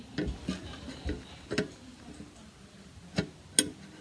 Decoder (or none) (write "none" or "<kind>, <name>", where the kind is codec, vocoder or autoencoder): none